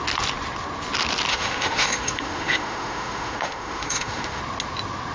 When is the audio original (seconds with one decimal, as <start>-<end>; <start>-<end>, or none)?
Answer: 0.0-1.3; 4.4-5.1